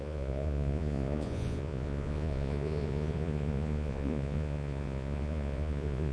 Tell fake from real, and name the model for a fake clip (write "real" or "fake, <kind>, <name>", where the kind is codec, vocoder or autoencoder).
fake, vocoder, Vocos